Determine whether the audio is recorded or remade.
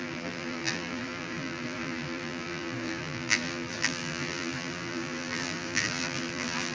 remade